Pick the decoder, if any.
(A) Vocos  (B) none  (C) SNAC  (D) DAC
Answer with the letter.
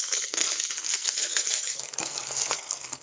C